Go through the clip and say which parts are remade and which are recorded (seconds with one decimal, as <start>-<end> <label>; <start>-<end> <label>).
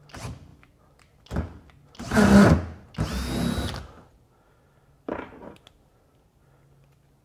0.0-7.2 recorded